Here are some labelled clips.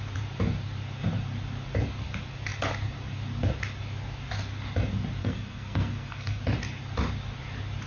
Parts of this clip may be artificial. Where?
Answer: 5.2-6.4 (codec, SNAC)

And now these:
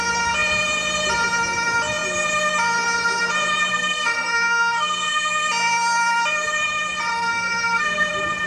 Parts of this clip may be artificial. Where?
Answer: 3.7-5.5 (codec, SNAC); 7.1-8.1

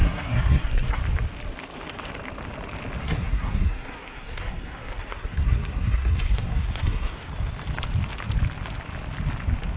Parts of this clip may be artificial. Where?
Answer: 0.0-1.0 (codec, SNAC); 3.0-7.3

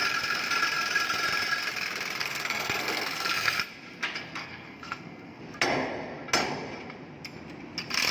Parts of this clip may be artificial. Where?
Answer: 2.2-3.6 (codec, SNAC); 4.4-5.4

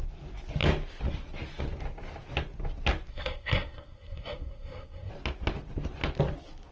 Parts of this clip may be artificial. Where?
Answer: 3.1-5.1 (codec, SNAC)

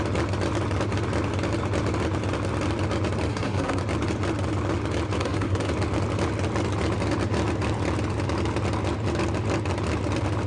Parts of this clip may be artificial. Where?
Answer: 3.3-3.8 (codec, SNAC); 5.2-5.7

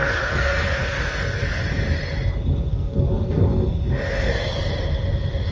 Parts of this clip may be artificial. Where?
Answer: 0.0-1.6 (codec, SNAC); 2.7-4.3

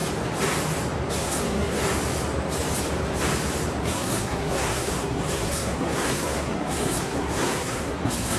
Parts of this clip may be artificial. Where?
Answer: 1.1-1.8 (codec, SNAC); 3.8-8.4